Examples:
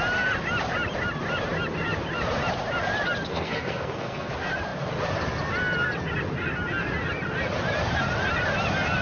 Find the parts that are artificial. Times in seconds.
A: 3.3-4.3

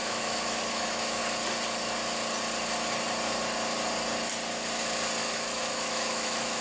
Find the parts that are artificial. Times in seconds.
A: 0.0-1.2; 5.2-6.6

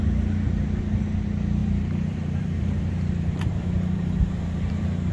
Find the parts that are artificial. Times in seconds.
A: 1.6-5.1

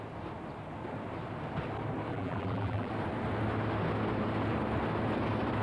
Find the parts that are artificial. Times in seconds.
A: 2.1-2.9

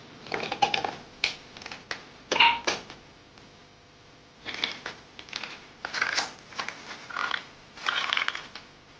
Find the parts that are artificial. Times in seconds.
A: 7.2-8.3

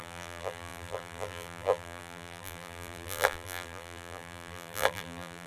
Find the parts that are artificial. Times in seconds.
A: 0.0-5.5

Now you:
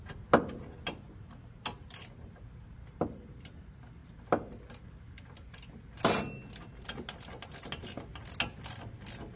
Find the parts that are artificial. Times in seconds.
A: none